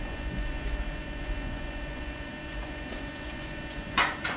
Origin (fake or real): fake